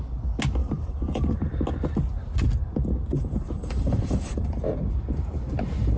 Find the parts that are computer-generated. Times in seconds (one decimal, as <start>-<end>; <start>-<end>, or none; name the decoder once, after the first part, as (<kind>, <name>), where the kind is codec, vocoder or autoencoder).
0.6-1.6 (vocoder, BigVGAN v2); 3.1-4.8